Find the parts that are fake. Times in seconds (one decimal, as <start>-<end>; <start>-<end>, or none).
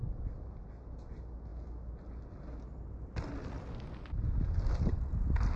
none